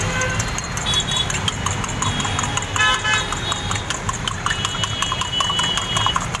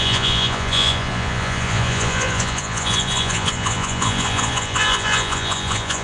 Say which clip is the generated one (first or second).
second